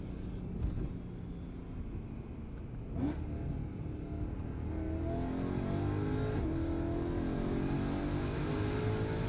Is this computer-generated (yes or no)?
no